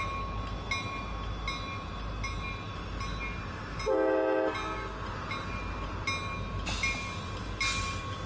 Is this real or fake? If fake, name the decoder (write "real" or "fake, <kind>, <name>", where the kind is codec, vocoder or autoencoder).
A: real